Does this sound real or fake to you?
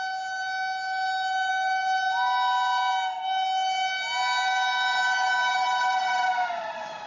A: real